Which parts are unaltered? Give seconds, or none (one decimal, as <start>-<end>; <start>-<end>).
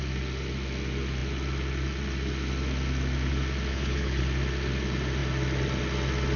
0.0-3.7; 4.2-6.4